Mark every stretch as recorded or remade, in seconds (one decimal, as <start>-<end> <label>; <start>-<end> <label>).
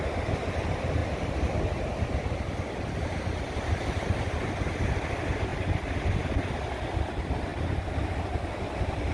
0.0-9.1 recorded